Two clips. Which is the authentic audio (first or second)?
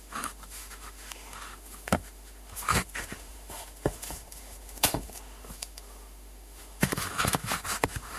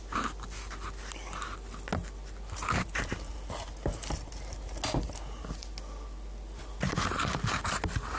second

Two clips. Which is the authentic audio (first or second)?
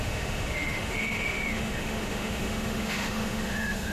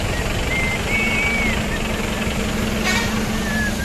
second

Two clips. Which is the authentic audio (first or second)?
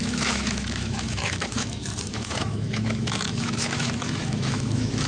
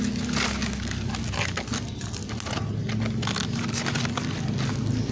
second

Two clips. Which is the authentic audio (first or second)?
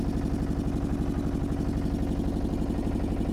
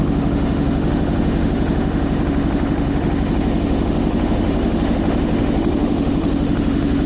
first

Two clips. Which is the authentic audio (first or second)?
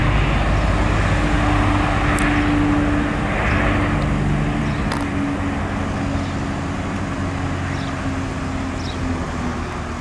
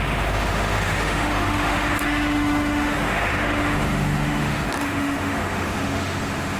first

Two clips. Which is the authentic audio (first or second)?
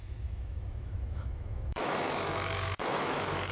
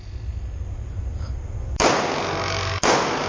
second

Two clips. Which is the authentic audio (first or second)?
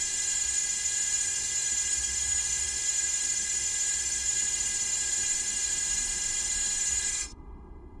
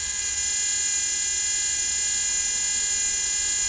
second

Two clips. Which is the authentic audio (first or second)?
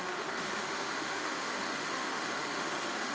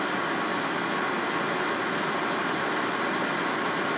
second